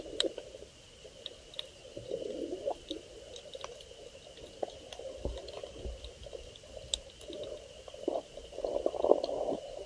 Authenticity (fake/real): real